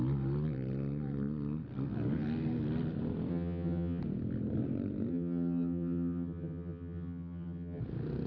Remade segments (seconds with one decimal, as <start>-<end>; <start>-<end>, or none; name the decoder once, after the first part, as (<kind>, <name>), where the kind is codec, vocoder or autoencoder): 3.3-4.0 (vocoder, HiFi-GAN); 5.1-7.8